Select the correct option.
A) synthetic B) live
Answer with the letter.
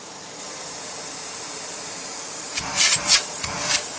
A